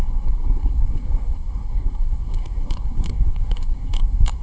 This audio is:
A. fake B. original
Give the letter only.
A